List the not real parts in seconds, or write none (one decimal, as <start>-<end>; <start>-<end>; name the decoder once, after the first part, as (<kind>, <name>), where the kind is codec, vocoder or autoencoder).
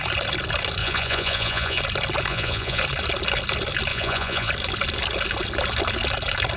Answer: 0.8-1.8 (vocoder, Vocos); 2.3-2.8; 3.9-4.5